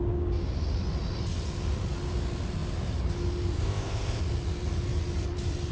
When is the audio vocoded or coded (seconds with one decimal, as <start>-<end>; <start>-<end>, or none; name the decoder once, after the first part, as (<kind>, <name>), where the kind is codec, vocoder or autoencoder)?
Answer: 3.6-4.2 (codec, ZipCodec)